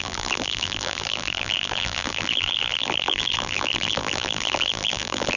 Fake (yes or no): yes